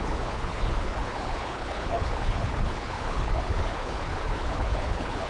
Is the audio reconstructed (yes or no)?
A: yes